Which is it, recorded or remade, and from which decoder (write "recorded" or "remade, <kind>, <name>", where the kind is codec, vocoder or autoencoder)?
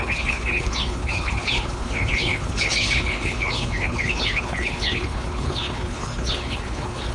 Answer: remade, codec, HILCodec